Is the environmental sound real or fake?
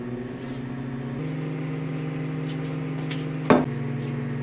real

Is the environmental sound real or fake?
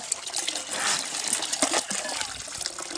real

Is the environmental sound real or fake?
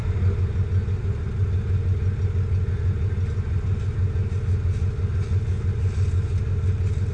real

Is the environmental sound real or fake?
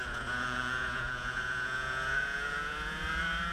fake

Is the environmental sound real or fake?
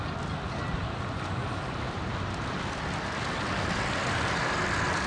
real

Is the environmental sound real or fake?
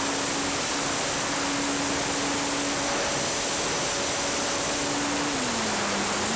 real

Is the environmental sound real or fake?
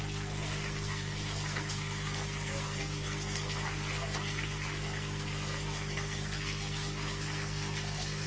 fake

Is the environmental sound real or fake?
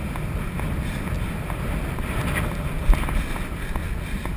real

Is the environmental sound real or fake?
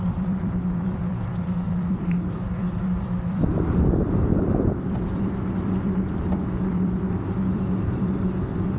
fake